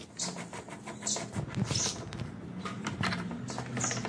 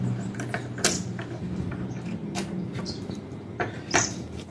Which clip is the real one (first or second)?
first